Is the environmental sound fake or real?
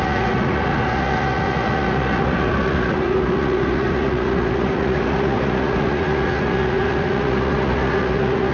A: fake